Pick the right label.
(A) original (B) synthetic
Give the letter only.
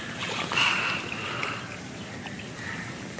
A